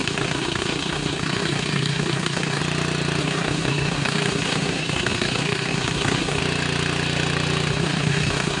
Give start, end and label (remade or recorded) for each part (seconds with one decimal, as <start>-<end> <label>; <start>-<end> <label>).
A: 0.0-2.6 remade; 2.6-3.2 recorded; 3.2-6.4 remade; 6.4-7.7 recorded; 7.7-8.6 remade